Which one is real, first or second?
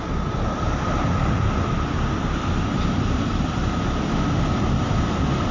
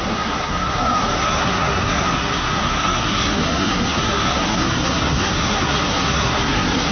first